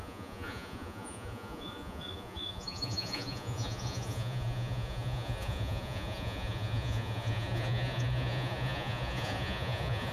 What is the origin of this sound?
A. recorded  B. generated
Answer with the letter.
B